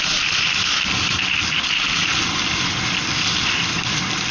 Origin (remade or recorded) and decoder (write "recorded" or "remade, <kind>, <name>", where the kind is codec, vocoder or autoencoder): recorded